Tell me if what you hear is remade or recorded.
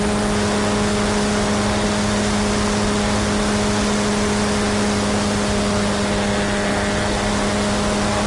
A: recorded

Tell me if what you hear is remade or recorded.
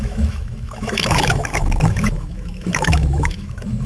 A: remade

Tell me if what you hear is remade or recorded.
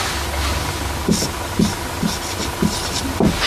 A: recorded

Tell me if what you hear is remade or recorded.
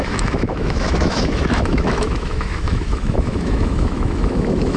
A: remade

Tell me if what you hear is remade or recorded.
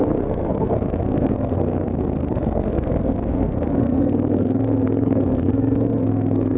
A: remade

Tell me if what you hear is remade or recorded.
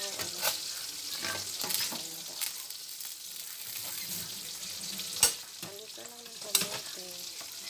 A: recorded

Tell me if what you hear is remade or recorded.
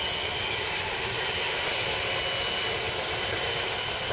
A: recorded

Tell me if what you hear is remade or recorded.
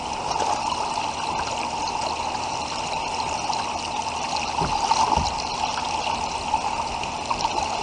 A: recorded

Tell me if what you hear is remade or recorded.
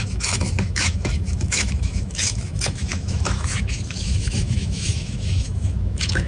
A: remade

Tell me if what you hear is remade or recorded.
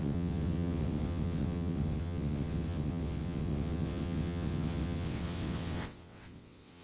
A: remade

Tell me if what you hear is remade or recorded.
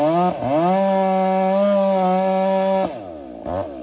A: recorded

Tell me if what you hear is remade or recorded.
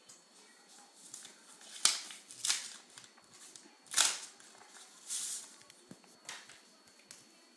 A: recorded